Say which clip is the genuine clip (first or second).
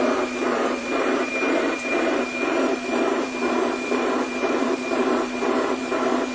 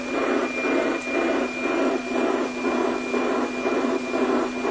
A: second